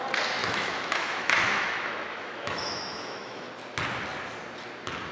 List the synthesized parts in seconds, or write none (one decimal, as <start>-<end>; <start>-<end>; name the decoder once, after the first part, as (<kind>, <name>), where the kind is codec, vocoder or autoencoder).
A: 0.4-3.5 (autoencoder, DAC-VAE)